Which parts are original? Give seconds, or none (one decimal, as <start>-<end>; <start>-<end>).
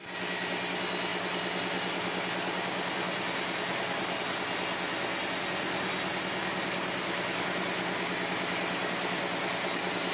0.0-10.1